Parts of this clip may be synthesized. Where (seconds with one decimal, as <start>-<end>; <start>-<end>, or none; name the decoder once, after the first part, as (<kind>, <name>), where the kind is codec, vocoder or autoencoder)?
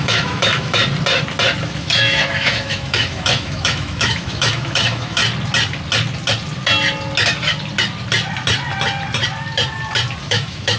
0.0-0.8 (autoencoder, DAC-VAE); 1.6-5.2; 10.2-10.8